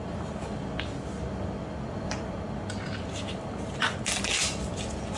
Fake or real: real